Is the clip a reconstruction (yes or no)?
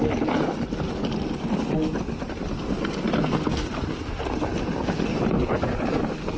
no